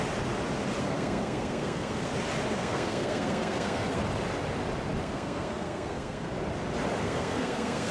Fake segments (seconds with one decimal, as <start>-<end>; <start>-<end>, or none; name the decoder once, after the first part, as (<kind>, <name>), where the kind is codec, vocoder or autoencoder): 0.8-2.1 (codec, SNAC); 2.6-4.0; 5.0-6.3; 7.0-7.9